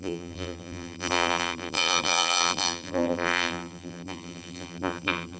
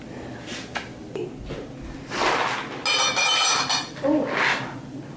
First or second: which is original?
second